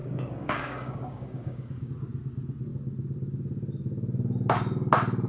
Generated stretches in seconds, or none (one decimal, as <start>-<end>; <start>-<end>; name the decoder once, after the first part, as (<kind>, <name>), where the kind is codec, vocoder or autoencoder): 0.0-1.9 (codec, DAC)